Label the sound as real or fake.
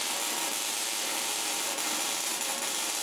fake